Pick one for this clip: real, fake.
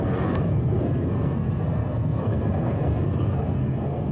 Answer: fake